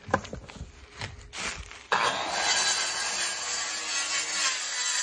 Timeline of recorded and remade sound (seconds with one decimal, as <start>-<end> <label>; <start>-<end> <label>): 0.0-5.0 recorded